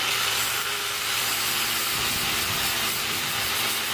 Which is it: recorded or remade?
recorded